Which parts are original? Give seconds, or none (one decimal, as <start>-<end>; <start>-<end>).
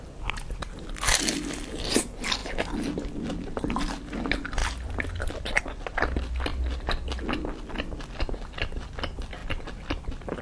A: 0.0-10.4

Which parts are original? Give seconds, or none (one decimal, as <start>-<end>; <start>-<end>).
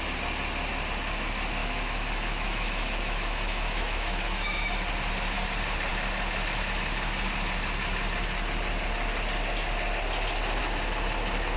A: 0.0-1.6; 4.7-11.6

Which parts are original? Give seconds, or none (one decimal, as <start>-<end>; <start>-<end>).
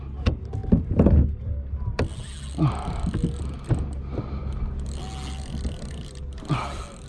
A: 0.0-7.1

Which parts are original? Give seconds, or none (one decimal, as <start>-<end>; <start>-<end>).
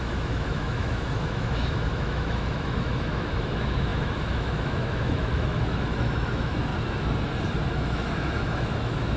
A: 6.7-7.7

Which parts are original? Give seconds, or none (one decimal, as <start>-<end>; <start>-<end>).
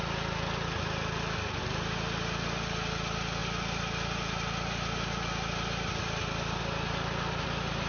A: 0.0-7.9